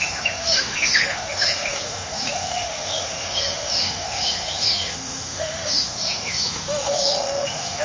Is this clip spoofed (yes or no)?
yes